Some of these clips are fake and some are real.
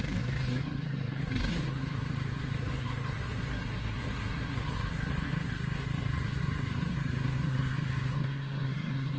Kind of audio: fake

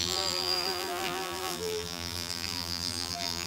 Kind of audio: fake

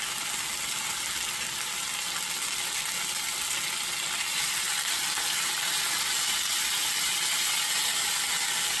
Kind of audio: real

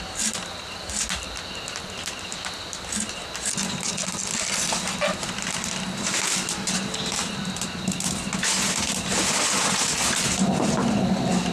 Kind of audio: real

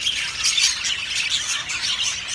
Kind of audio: real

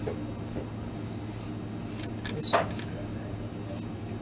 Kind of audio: real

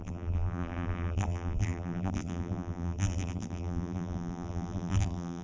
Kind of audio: fake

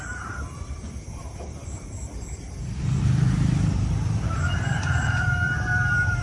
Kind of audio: fake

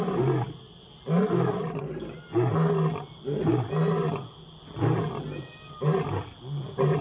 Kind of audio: real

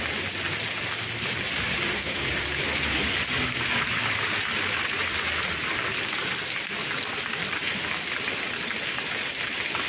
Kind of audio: fake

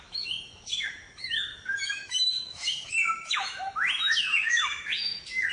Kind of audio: fake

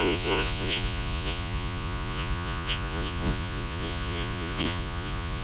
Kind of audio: fake